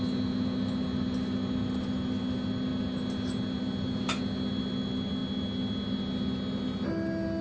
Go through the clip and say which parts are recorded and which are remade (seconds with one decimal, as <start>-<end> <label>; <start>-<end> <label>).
0.0-7.4 recorded